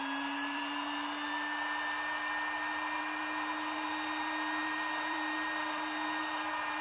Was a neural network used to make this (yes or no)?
yes